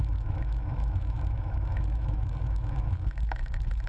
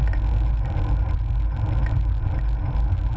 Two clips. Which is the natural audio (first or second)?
second